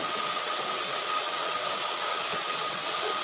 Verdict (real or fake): fake